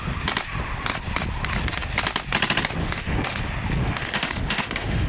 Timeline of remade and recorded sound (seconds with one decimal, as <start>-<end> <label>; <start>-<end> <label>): 0.0-2.8 recorded; 2.8-3.4 remade; 3.4-3.8 recorded; 3.8-5.1 remade

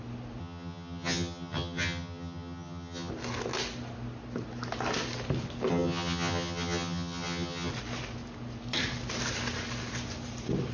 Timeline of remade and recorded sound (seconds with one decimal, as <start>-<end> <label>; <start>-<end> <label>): 0.0-0.4 recorded; 0.4-3.1 remade; 3.1-5.7 recorded; 5.7-7.7 remade; 7.7-10.7 recorded

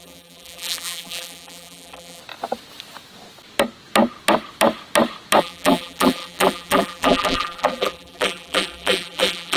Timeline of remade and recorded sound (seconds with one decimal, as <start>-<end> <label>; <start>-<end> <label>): 0.0-2.2 remade; 2.2-5.4 recorded; 5.4-9.6 remade

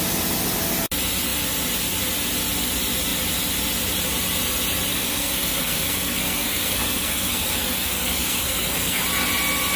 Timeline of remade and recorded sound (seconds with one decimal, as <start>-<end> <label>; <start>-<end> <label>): 0.0-4.9 recorded; 4.9-9.0 remade; 9.0-9.8 recorded